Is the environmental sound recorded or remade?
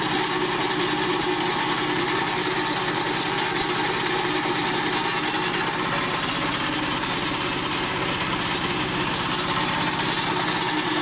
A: recorded